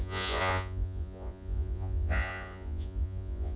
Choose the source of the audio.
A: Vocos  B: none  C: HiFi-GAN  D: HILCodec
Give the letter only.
A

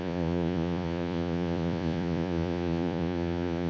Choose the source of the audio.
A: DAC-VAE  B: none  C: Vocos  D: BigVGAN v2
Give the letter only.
C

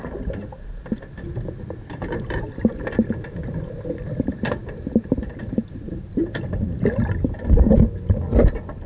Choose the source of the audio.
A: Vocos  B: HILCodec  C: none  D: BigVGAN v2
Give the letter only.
C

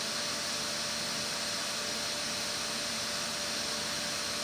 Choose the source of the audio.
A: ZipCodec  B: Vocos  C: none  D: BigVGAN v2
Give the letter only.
C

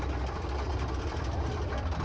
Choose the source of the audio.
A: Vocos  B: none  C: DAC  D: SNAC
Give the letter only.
B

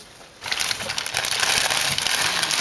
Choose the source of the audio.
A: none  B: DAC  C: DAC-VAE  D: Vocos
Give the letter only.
A